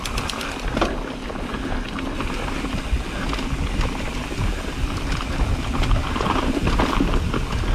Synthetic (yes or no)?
no